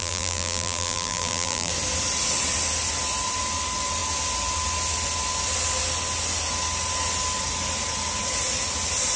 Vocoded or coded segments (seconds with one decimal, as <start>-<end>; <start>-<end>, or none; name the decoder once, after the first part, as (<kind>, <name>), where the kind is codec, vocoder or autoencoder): 0.0-1.7 (vocoder, BigVGAN v2)